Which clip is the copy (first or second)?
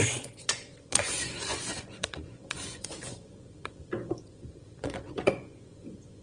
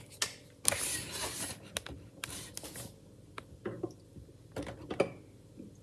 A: first